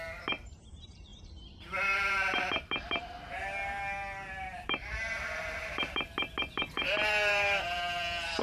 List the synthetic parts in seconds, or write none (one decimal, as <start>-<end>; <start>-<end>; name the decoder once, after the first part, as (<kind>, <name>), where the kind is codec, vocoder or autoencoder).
0.0-1.1 (vocoder, BigVGAN v2); 1.8-4.8; 5.4-8.4